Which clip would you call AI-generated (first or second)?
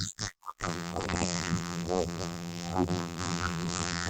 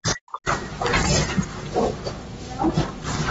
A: first